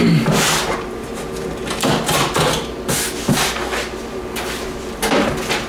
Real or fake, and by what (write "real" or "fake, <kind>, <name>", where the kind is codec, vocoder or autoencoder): real